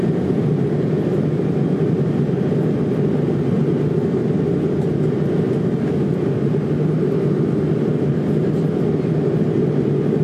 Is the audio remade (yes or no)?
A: no